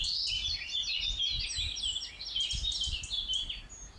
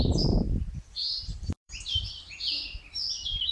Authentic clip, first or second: first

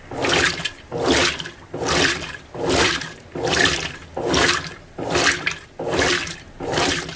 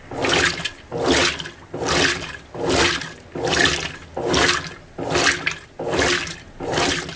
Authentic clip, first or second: second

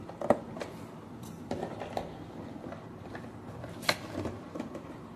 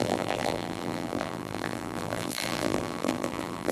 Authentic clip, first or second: first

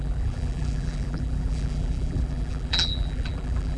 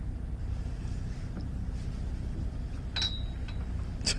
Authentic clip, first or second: second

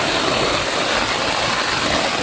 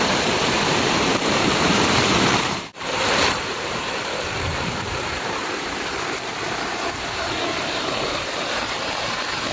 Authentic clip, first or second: first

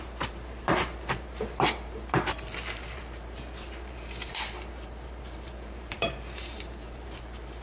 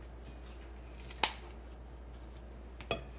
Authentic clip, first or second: second